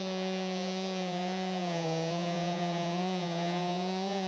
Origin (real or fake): fake